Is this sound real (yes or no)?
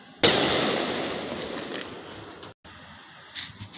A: yes